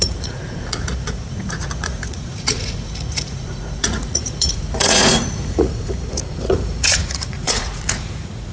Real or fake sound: fake